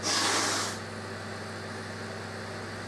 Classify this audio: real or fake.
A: real